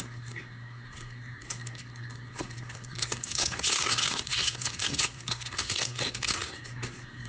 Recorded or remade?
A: remade